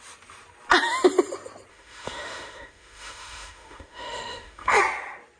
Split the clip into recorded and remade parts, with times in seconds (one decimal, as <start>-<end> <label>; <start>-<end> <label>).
0.0-1.7 recorded; 1.7-4.8 remade; 4.8-5.4 recorded